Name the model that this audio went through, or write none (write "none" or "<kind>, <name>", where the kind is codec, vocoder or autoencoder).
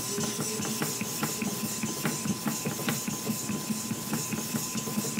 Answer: none